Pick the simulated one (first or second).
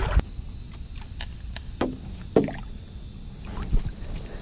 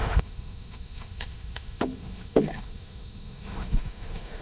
second